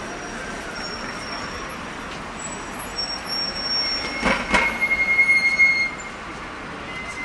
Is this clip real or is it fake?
real